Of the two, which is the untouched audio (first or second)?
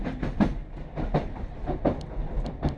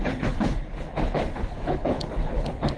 first